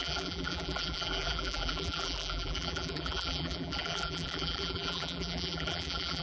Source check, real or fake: fake